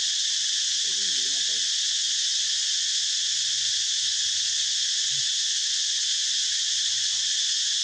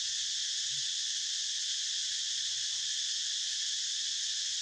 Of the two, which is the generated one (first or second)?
first